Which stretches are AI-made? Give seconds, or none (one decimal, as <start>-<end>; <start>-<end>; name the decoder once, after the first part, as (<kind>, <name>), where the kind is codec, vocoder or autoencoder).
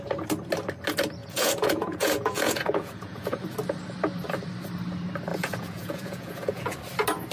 1.2-3.4 (vocoder, Vocos); 5.3-6.8